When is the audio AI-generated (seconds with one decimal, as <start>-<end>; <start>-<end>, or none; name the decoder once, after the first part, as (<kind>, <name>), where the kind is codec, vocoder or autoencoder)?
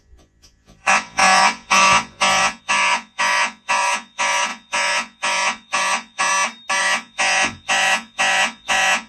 0.0-6.3 (vocoder, Vocos); 6.8-9.1